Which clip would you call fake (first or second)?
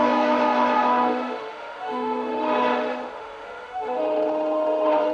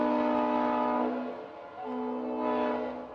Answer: first